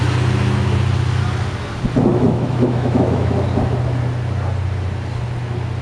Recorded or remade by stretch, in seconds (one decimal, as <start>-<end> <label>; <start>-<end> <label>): 0.0-2.1 recorded; 2.1-3.3 remade; 3.3-5.8 recorded